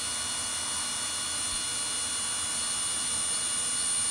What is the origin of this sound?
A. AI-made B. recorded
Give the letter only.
B